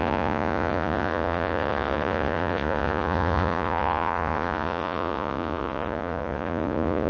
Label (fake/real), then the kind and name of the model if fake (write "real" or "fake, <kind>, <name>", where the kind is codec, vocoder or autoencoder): fake, vocoder, Vocos